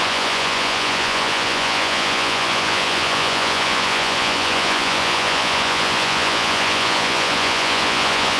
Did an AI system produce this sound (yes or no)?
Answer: yes